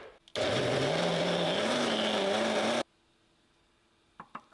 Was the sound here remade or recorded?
recorded